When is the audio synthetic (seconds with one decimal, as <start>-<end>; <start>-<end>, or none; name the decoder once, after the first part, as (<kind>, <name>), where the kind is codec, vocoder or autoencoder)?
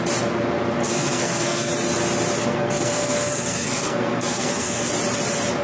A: 0.8-1.7 (codec, SNAC); 2.4-4.9